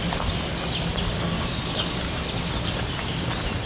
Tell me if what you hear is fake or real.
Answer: real